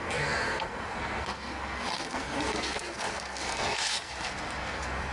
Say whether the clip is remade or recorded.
remade